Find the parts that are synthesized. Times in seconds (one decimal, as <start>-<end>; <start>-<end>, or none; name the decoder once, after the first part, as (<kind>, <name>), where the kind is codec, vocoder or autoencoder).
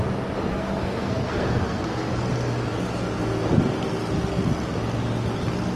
0.5-2.1 (codec, SNAC)